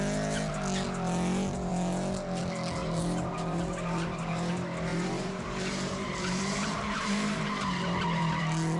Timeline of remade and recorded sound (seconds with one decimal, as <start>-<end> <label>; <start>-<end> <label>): 0.0-2.8 recorded; 2.8-4.5 remade; 4.5-4.9 recorded; 4.9-8.4 remade; 8.4-8.8 recorded